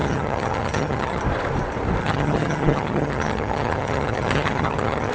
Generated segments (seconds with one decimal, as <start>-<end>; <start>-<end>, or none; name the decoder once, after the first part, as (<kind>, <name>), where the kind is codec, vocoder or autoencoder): 0.0-1.2 (vocoder, HiFi-GAN); 2.0-5.1